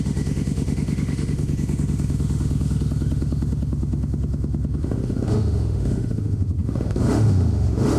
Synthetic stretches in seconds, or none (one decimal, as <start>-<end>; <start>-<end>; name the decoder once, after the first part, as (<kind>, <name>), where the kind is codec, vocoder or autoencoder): 0.0-8.0 (autoencoder, DAC-VAE)